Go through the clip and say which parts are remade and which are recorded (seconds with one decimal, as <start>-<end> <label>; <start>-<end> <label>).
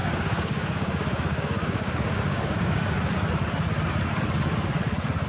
0.0-2.9 remade; 2.9-5.3 recorded